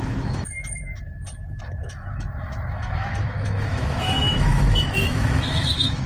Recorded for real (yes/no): no